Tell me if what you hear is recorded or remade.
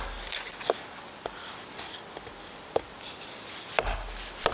recorded